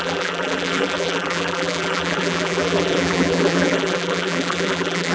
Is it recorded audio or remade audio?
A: remade